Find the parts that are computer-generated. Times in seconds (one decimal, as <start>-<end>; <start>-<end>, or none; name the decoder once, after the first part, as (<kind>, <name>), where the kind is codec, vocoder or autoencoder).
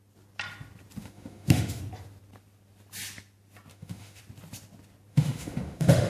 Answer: 1.0-1.8 (autoencoder, DAC-VAE); 3.7-4.2; 5.1-6.1